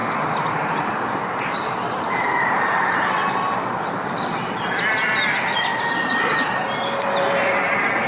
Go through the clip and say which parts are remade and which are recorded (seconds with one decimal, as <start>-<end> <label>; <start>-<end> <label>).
0.0-3.3 remade; 3.3-8.1 recorded